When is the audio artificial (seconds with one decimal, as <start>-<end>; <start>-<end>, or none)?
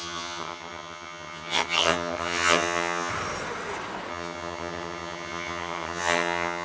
0.0-3.1; 4.1-6.6